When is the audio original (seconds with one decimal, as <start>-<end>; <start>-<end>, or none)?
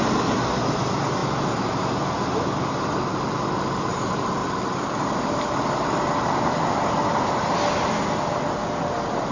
0.0-9.3